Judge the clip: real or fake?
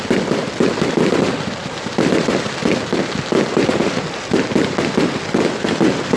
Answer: fake